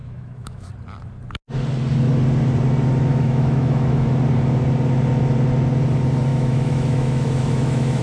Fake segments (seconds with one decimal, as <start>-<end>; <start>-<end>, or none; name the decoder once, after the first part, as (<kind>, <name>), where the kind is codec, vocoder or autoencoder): 0.0-0.7 (autoencoder, DAC-VAE); 3.1-4.1; 6.3-8.0